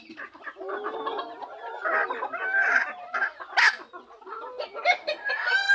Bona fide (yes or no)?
yes